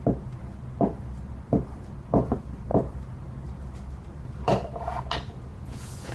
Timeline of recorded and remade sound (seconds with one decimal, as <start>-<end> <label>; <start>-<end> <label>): 0.0-5.5 recorded; 5.5-6.1 remade